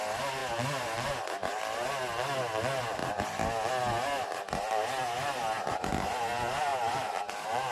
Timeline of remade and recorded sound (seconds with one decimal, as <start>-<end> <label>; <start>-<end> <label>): 0.0-7.7 recorded